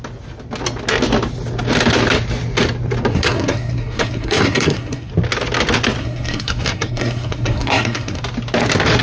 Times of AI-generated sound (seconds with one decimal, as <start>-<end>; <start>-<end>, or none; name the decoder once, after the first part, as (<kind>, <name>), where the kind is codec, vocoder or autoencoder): 3.1-5.1 (codec, SNAC); 6.0-8.2